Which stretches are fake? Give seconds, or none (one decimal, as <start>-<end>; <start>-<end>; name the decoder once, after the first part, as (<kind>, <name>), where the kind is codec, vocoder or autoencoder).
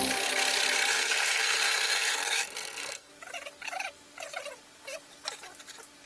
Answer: 0.9-3.1 (codec, SNAC)